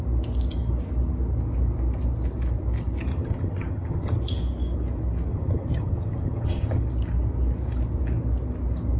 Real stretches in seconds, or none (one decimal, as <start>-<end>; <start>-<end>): 0.0-3.1; 4.2-5.3; 6.8-9.0